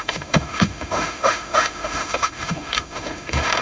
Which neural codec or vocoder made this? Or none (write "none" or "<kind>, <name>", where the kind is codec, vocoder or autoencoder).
autoencoder, DAC-VAE